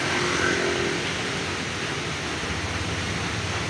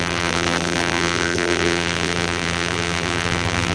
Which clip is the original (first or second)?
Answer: first